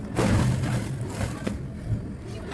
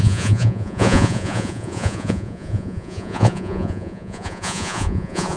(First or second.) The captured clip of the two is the first